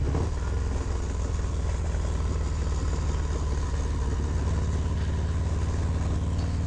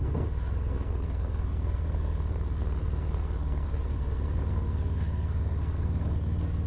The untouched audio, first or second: first